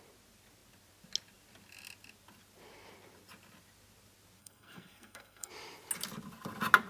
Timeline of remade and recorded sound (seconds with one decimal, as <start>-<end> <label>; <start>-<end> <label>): 0.0-4.4 recorded; 4.4-5.5 remade; 5.5-6.9 recorded